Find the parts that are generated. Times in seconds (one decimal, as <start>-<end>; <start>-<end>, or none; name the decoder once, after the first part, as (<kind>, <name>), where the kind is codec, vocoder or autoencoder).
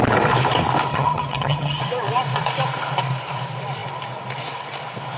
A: 0.9-1.8 (vocoder, HiFi-GAN)